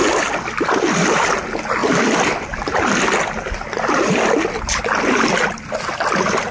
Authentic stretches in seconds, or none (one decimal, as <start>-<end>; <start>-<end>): 0.0-6.5